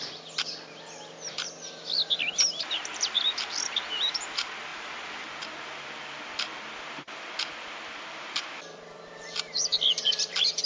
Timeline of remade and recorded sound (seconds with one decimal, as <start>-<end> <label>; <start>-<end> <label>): 0.0-10.7 remade